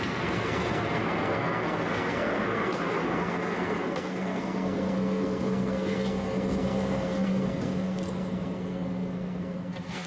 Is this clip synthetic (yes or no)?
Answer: yes